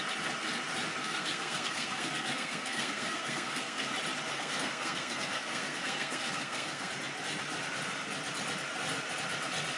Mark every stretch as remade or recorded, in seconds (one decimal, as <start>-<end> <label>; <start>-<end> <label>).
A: 0.0-1.0 recorded; 1.0-3.9 remade; 3.9-4.3 recorded; 4.3-6.9 remade; 6.9-9.8 recorded